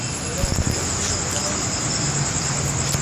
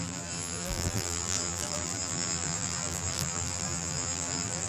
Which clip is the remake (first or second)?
second